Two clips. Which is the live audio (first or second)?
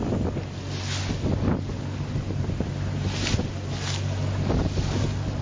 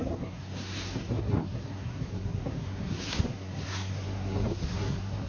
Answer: first